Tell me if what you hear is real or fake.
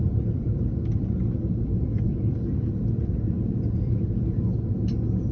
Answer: fake